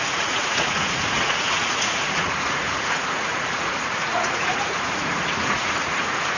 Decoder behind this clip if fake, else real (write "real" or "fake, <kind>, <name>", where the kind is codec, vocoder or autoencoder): fake, vocoder, Vocos